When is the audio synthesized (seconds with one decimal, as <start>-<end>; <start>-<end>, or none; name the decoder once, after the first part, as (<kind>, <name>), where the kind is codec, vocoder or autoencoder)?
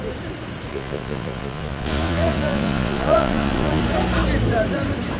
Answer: 0.7-3.8 (vocoder, Vocos)